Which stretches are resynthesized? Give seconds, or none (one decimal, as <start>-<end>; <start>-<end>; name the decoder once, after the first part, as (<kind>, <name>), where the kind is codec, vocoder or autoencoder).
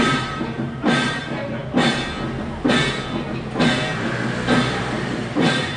0.0-1.6 (vocoder, BigVGAN v2); 4.8-5.8